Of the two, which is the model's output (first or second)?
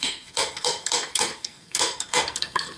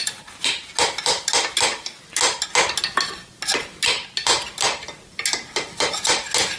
first